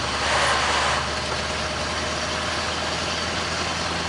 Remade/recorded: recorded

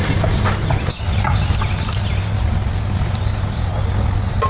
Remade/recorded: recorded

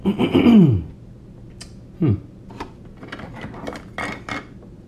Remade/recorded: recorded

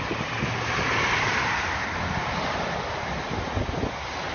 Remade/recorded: recorded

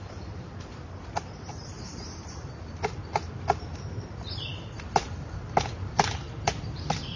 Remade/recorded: remade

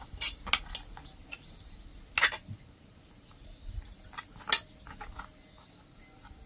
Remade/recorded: recorded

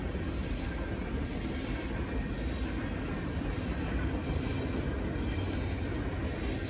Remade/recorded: recorded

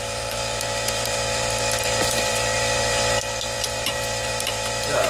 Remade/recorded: remade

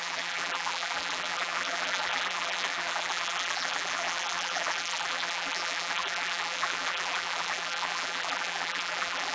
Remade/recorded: remade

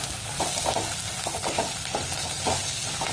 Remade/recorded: recorded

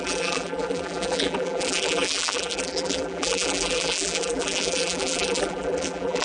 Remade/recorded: remade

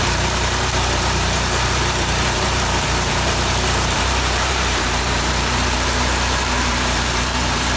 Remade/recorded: remade